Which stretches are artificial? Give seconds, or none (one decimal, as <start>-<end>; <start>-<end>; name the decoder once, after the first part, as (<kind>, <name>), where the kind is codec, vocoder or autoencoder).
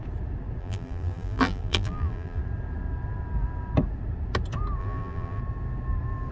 0.6-2.4 (vocoder, BigVGAN v2); 4.8-5.4